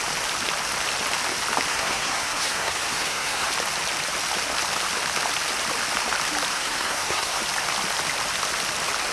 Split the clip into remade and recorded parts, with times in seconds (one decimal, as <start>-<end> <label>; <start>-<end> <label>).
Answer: 0.0-1.7 recorded; 1.7-3.5 remade; 3.5-6.5 recorded; 6.5-7.4 remade; 7.4-9.1 recorded